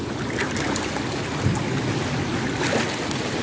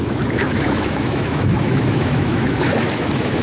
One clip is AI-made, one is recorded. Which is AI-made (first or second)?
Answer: second